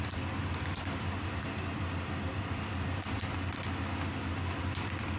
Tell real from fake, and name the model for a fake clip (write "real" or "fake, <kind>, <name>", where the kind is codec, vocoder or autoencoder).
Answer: fake, vocoder, BigVGAN v2